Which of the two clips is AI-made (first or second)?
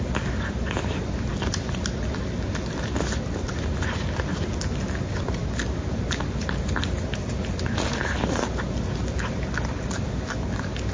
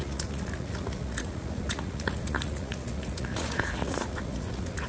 second